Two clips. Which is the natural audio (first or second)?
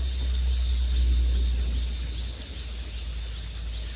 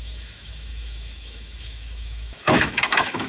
first